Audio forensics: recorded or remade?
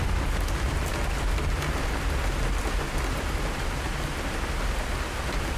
recorded